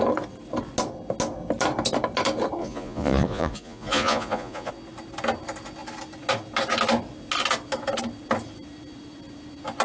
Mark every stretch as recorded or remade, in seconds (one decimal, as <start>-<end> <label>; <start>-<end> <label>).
0.0-2.6 recorded; 2.6-4.7 remade; 4.7-9.8 recorded